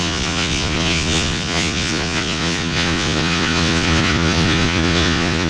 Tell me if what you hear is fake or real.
fake